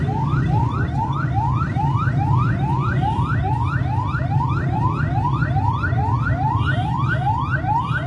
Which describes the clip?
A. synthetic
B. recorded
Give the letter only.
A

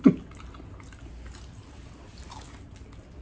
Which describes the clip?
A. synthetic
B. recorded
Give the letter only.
B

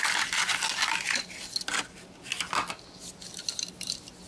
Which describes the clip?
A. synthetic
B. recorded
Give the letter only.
B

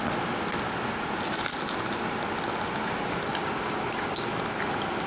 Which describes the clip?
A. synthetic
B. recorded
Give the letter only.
B